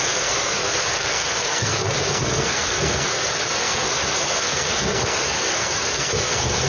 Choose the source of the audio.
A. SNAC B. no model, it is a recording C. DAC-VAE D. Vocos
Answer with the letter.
A